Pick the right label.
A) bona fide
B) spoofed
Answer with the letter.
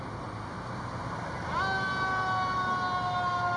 A